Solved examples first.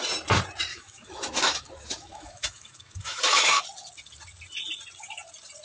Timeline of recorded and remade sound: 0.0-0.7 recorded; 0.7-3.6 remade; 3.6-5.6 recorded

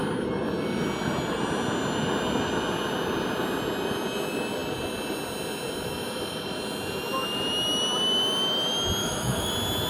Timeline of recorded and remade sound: 0.0-9.0 recorded; 9.0-9.5 remade; 9.5-9.9 recorded

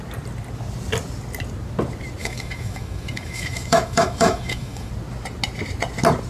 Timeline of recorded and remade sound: 0.0-2.2 recorded; 2.2-4.9 remade; 4.9-6.3 recorded

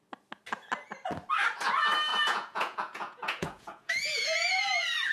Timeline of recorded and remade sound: 0.0-2.1 recorded; 2.1-4.6 remade; 4.6-5.1 recorded

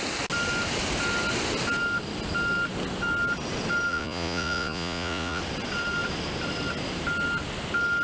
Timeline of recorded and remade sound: 0.0-3.9 recorded; 3.9-5.4 remade; 5.4-8.0 recorded